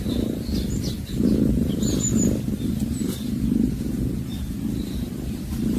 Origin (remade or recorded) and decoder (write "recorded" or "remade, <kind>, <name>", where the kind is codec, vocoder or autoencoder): recorded